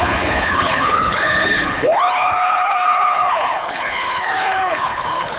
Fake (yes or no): yes